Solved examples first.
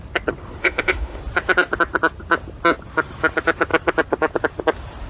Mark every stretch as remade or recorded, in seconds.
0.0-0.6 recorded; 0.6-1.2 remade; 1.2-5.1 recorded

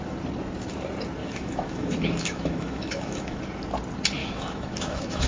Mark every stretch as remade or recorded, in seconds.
0.0-1.2 recorded; 1.2-3.4 remade; 3.4-4.2 recorded; 4.2-5.3 remade